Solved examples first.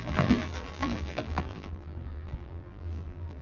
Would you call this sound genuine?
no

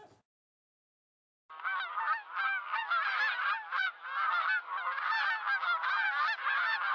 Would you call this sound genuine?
yes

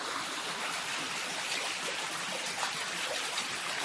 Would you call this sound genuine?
no